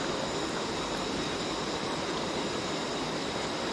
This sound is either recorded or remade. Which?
recorded